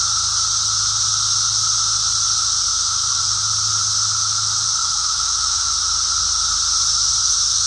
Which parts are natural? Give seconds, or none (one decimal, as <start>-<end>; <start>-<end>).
0.0-2.7; 3.2-4.8; 5.7-7.2